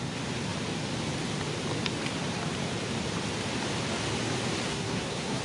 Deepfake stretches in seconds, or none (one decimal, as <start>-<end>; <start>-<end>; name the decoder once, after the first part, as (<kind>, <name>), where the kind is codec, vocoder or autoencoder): 4.7-5.4 (codec, SNAC)